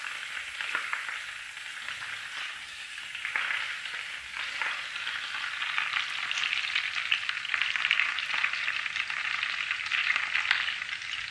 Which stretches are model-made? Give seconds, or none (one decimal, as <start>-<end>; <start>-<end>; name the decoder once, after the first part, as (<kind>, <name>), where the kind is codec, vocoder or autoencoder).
2.4-3.0 (codec, SNAC)